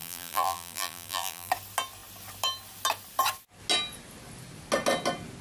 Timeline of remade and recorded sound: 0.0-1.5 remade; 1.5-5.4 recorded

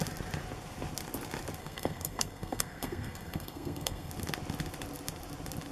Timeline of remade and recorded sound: 0.0-1.6 recorded; 1.6-4.1 remade; 4.1-5.7 recorded

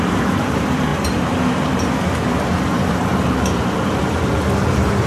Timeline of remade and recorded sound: 0.0-5.1 remade

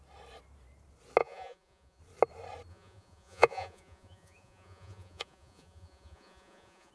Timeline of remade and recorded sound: 0.0-1.2 recorded; 1.2-2.0 remade; 2.0-2.7 recorded; 2.7-6.9 remade

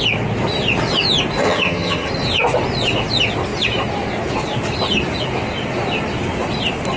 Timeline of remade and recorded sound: 0.0-1.4 recorded; 1.4-2.1 remade; 2.1-7.0 recorded

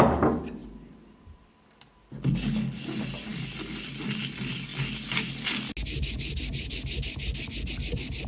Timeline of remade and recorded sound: 0.0-8.3 recorded

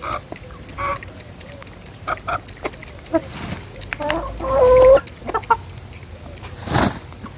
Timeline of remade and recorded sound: 0.0-0.9 recorded; 0.9-2.3 remade; 2.3-7.4 recorded